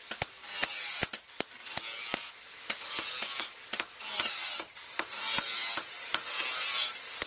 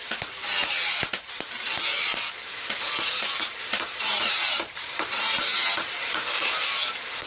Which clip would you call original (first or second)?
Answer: first